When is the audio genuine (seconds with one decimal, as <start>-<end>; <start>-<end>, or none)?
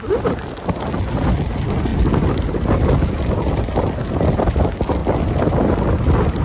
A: 0.0-6.4